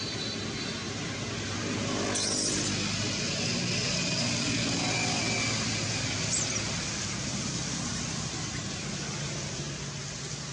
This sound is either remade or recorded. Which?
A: recorded